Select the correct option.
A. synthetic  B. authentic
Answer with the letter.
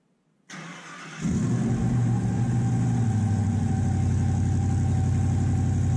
B